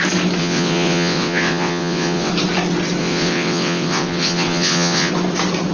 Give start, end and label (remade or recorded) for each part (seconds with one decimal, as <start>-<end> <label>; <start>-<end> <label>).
0.0-0.4 recorded; 0.4-2.3 remade; 2.3-3.0 recorded; 3.0-5.1 remade; 5.1-5.7 recorded